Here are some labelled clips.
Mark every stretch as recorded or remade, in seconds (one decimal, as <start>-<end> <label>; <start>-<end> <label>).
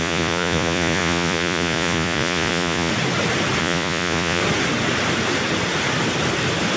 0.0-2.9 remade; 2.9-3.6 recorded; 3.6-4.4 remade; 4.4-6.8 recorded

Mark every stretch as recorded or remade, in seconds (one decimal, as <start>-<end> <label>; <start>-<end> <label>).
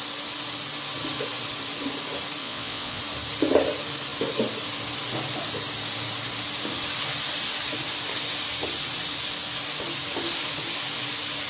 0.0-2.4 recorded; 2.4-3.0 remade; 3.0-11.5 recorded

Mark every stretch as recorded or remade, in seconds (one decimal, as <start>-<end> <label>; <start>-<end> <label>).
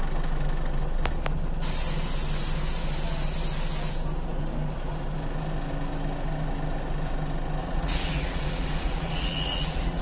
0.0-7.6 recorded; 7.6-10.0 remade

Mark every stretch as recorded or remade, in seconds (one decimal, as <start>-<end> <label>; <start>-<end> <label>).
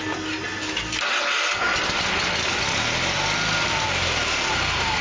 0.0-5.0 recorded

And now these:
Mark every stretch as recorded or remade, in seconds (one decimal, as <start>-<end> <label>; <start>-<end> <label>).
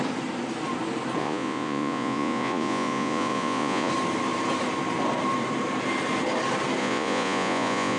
0.0-1.2 recorded; 1.2-3.9 remade; 3.9-6.8 recorded; 6.8-8.0 remade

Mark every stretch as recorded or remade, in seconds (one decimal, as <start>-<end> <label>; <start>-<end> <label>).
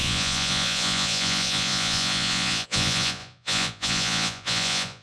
0.0-5.0 remade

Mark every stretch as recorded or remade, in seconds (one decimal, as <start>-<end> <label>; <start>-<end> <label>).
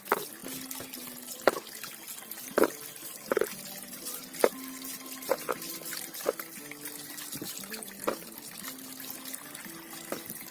0.0-10.5 recorded